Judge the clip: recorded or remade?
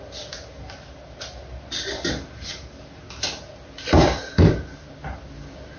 recorded